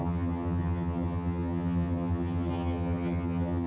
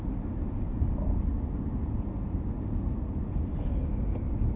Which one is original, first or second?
second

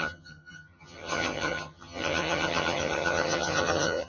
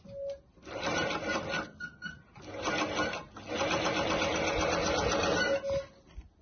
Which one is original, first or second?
second